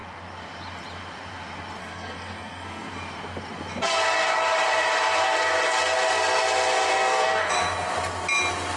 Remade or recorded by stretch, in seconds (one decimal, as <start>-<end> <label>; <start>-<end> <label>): 0.0-1.8 recorded; 1.8-2.9 remade; 2.9-6.9 recorded; 6.9-7.5 remade; 7.5-8.8 recorded